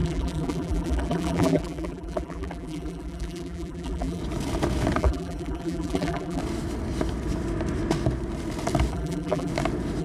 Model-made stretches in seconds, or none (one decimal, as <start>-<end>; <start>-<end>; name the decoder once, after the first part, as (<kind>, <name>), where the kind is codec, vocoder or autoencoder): 0.0-4.2 (vocoder, BigVGAN v2); 5.0-6.4; 8.9-9.5